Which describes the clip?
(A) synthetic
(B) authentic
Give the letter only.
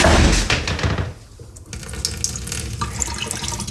B